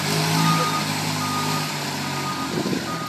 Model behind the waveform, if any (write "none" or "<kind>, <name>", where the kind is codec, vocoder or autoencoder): none